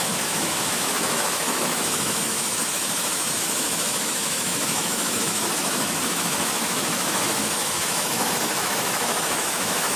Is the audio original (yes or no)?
no